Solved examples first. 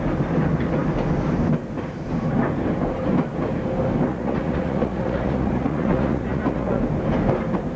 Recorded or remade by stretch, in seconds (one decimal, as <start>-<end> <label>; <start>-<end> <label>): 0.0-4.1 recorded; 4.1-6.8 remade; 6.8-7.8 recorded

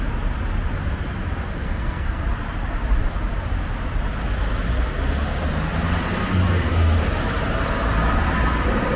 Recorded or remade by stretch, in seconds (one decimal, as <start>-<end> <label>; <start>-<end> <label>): 0.0-1.6 recorded; 1.6-2.2 remade; 2.2-9.0 recorded

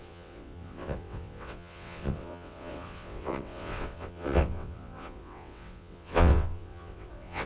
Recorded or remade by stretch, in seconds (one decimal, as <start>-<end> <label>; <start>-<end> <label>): 0.0-7.5 remade